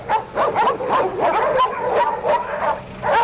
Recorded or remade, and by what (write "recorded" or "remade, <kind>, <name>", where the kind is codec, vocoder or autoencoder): recorded